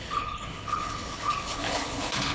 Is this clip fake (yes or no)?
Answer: yes